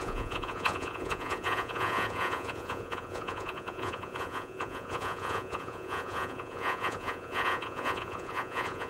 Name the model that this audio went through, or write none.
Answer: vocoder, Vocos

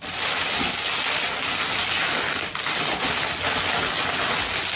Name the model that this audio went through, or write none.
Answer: none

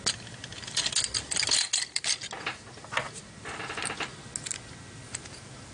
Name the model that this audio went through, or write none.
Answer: none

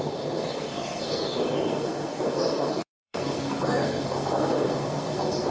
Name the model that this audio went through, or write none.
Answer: codec, SNAC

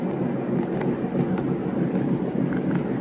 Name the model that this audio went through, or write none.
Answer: none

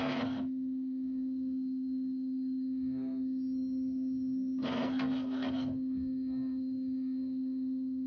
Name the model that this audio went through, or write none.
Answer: codec, SNAC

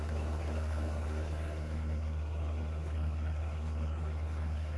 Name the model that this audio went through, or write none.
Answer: codec, SNAC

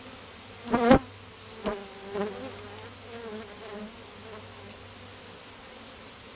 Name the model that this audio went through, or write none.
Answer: none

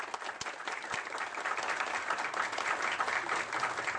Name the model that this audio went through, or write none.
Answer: none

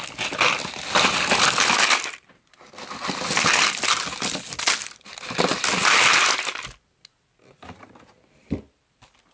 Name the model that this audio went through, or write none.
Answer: none